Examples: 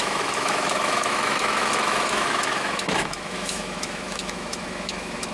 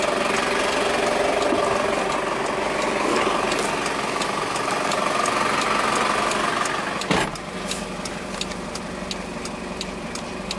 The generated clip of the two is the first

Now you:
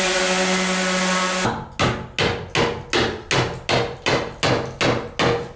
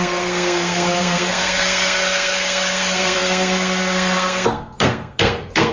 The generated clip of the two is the second